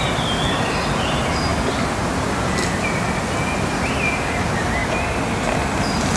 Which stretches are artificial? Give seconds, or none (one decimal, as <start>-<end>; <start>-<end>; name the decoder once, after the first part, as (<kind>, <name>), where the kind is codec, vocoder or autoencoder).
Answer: none